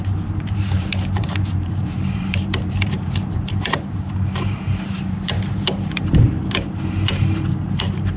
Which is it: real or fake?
fake